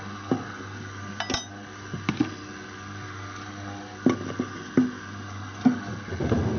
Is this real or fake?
real